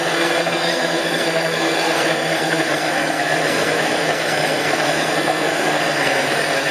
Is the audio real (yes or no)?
no